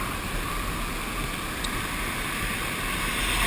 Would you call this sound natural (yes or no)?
yes